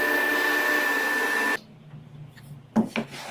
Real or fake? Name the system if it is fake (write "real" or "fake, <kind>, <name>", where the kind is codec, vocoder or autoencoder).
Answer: real